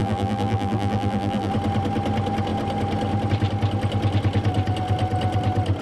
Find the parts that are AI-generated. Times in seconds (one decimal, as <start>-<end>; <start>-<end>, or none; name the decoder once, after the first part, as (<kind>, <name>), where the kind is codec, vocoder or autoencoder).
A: 0.0-1.5 (vocoder, BigVGAN v2)